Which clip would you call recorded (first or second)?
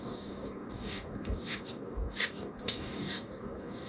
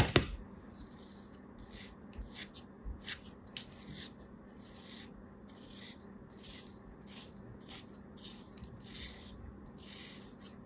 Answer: second